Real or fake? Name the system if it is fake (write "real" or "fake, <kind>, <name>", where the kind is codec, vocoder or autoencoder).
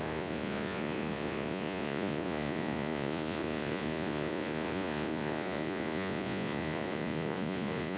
fake, vocoder, Vocos